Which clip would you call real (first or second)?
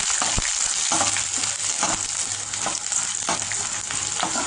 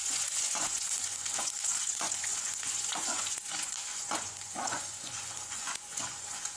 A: first